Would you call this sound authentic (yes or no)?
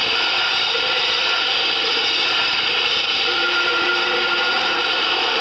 no